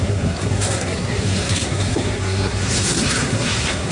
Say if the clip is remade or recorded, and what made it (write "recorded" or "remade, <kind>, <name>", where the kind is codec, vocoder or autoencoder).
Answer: remade, codec, SNAC